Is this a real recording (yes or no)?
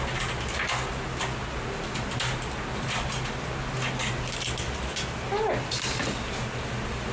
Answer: yes